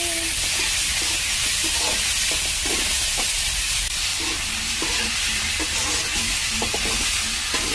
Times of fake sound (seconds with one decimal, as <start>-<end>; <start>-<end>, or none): 4.1-5.1